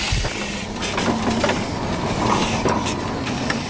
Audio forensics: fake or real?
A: real